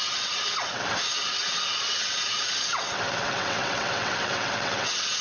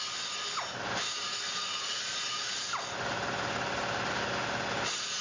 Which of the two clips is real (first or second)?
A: second